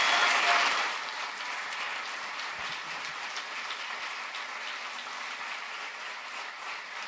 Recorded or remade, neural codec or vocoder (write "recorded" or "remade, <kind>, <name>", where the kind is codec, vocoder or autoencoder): recorded